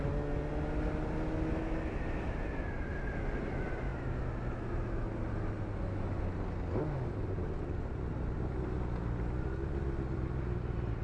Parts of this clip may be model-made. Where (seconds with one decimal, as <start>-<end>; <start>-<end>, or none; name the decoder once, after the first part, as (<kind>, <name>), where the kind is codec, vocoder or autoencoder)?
none